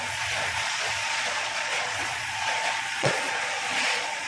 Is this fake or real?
fake